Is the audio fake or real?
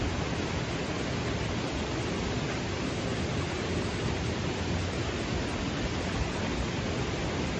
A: real